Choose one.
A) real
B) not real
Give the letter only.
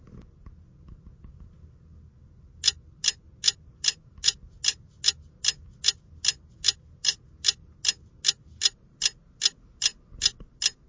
A